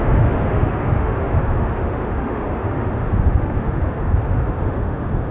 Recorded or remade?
remade